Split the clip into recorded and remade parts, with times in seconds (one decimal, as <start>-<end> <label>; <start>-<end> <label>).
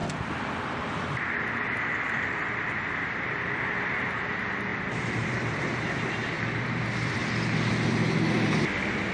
0.0-7.2 remade; 7.2-7.7 recorded; 7.7-9.1 remade